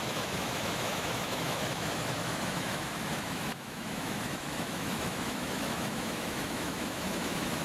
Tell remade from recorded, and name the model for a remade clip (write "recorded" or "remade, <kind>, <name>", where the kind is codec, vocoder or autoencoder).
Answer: remade, autoencoder, DAC-VAE